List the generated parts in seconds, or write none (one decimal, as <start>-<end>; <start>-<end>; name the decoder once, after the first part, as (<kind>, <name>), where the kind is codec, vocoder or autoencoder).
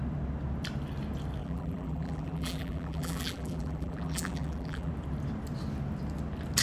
1.4-4.9 (vocoder, BigVGAN v2)